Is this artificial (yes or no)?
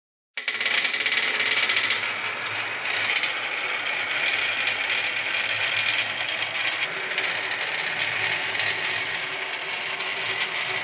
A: no